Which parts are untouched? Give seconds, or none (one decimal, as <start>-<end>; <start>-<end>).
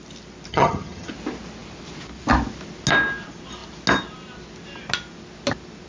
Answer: 0.0-0.5; 1.1-5.9